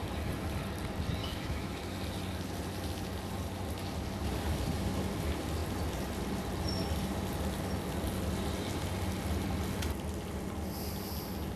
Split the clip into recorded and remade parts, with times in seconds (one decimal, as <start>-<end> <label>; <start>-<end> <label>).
0.0-1.2 recorded; 1.2-1.8 remade; 1.8-11.6 recorded